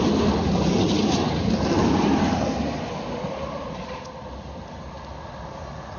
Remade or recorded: recorded